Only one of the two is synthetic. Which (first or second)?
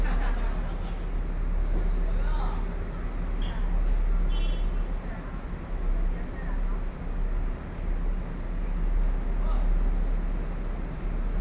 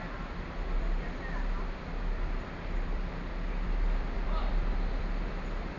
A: second